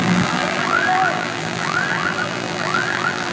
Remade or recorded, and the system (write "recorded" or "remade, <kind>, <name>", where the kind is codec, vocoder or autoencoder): remade, vocoder, BigVGAN v2